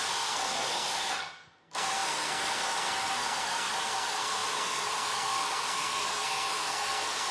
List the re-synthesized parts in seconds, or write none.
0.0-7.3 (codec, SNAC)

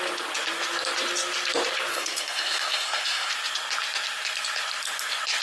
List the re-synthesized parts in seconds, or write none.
1.9-3.3 (codec, SNAC)

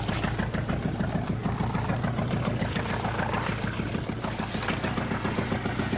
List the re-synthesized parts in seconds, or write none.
none

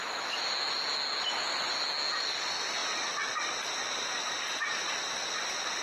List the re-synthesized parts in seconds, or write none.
none

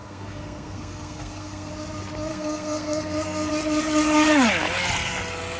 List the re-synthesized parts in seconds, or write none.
0.0-1.7 (codec, SNAC); 2.3-3.5

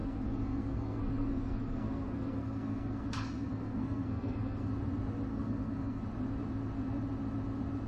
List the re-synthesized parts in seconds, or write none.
0.0-4.7 (codec, SNAC); 5.3-6.0

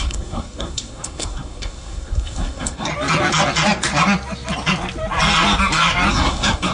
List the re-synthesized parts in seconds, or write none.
0.0-2.9 (codec, SNAC); 6.1-6.7

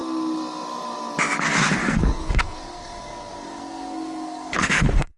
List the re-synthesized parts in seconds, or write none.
1.8-5.2 (codec, SNAC)